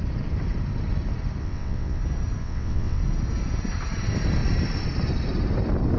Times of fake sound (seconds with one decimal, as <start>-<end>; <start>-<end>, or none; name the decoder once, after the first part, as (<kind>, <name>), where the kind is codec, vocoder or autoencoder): 1.4-2.0 (vocoder, WaveNeXt); 2.4-3.0

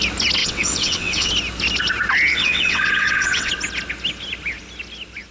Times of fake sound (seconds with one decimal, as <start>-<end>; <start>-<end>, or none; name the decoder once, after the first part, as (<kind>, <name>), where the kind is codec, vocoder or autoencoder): 0.4-1.3 (vocoder, WaveNeXt); 2.3-3.5

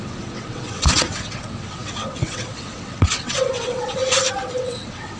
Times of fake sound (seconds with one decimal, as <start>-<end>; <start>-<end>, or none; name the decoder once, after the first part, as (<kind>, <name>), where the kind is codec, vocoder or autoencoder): 0.0-4.0 (vocoder, WaveNeXt); 4.6-5.2

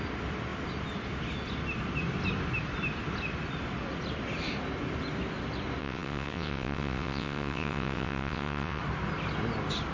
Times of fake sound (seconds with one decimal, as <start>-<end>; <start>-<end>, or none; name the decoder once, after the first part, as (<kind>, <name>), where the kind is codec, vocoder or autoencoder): 5.8-8.8 (vocoder, WaveNeXt)

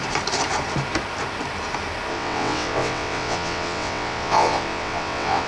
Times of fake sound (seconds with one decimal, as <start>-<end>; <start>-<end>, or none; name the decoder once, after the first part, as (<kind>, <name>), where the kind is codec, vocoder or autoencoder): 2.1-5.5 (vocoder, WaveNeXt)